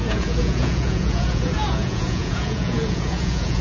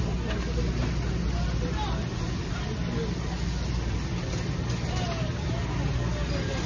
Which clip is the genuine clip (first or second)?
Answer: second